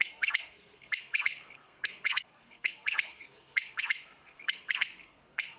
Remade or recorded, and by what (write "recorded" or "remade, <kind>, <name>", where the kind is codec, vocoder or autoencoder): remade, codec, SNAC